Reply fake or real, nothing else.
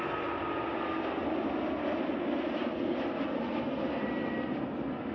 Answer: real